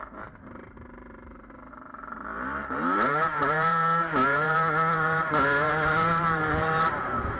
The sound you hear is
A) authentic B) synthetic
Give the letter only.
B